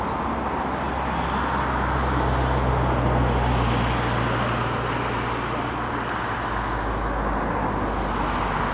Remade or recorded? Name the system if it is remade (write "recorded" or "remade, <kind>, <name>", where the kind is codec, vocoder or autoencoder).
recorded